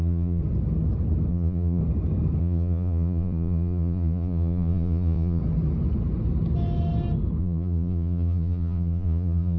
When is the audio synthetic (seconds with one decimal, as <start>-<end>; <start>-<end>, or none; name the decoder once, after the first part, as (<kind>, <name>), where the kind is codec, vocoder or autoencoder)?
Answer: 0.0-0.4 (vocoder, Vocos); 1.3-1.8; 2.4-5.4; 7.4-9.6

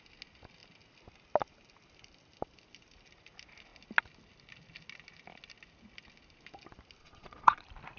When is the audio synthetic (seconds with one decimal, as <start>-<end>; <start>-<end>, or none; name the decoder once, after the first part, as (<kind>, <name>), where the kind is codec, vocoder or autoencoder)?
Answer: 7.0-7.6 (vocoder, Vocos)